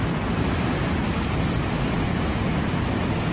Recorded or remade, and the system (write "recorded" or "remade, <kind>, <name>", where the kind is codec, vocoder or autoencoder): recorded